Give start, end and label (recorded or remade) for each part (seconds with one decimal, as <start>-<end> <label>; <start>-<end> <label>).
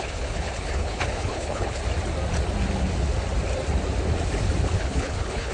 0.0-1.8 remade; 1.8-4.8 recorded; 4.8-5.5 remade